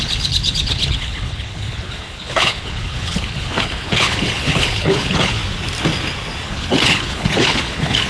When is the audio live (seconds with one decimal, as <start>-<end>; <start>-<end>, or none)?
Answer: 5.4-6.4